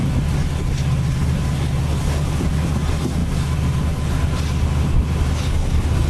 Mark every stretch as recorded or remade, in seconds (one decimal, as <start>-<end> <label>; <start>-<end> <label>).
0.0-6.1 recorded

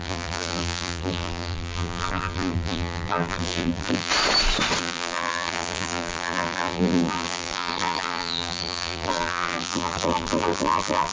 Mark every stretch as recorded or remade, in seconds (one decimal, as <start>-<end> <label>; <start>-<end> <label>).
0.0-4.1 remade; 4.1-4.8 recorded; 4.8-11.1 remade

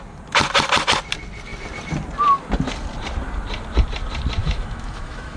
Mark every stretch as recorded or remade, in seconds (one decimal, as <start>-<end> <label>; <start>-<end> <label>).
0.0-4.4 recorded; 4.4-5.4 remade

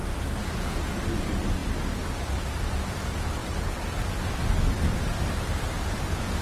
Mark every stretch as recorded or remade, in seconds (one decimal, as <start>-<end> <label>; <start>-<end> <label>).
0.0-1.0 recorded; 1.0-1.6 remade; 1.6-2.7 recorded; 2.7-3.4 remade; 3.4-4.8 recorded; 4.8-6.4 remade

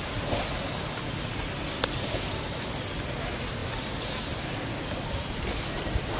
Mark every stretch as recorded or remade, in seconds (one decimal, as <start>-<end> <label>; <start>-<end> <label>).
0.0-6.2 recorded

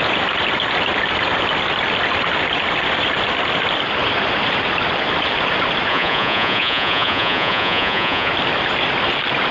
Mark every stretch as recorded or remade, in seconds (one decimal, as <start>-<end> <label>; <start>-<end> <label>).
0.0-5.9 recorded; 5.9-8.3 remade; 8.3-9.5 recorded

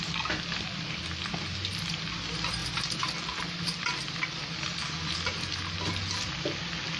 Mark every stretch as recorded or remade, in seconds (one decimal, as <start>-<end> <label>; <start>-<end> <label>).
0.0-7.0 recorded